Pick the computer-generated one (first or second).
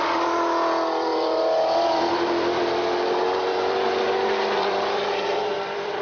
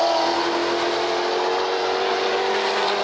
first